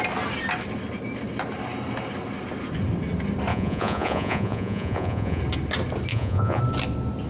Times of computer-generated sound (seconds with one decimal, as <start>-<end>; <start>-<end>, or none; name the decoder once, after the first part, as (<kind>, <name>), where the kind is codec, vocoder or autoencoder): 3.5-5.4 (vocoder, Vocos); 6.1-6.6